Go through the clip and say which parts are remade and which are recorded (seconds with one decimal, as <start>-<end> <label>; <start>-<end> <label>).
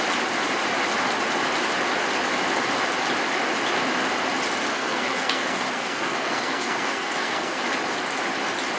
0.0-4.7 recorded; 4.7-7.6 remade; 7.6-8.8 recorded